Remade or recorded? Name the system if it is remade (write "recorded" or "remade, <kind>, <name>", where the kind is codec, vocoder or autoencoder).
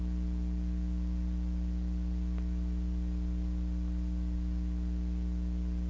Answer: recorded